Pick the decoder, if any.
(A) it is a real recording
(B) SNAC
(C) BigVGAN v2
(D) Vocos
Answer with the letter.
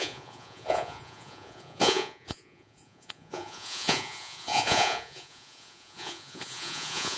D